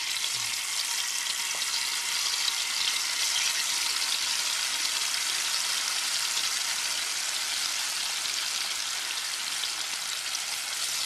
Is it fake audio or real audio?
real